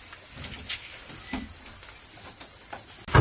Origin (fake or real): real